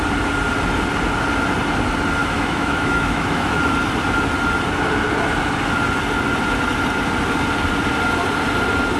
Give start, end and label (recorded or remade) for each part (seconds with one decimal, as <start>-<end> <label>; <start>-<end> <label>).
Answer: 0.0-2.2 recorded; 2.2-3.6 remade; 3.6-9.0 recorded